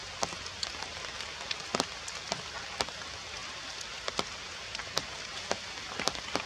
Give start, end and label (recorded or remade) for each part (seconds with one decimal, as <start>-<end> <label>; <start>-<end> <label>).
0.0-6.5 recorded